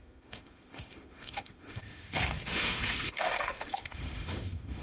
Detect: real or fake fake